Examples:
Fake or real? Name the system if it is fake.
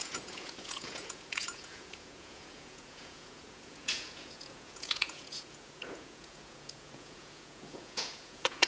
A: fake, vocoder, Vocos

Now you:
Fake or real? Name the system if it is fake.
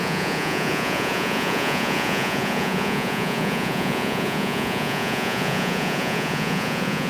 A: fake, vocoder, Vocos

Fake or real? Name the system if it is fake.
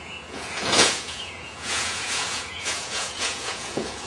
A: fake, vocoder, Vocos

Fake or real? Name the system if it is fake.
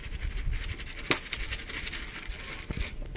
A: real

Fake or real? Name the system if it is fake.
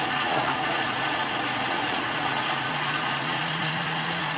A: fake, vocoder, Vocos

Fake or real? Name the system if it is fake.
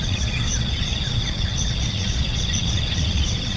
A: fake, vocoder, Vocos